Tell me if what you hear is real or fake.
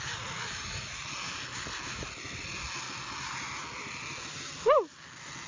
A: real